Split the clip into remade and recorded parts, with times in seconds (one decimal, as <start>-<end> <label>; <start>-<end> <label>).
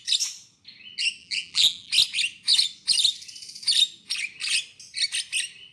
0.0-1.2 recorded; 1.2-1.9 remade; 1.9-5.7 recorded